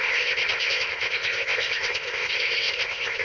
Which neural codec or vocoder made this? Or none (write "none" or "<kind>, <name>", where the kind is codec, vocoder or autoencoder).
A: codec, ZipCodec